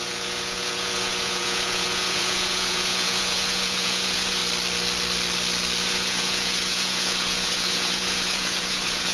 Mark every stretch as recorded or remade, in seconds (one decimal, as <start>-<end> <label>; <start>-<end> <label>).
0.0-4.4 remade; 4.4-5.8 recorded; 5.8-9.1 remade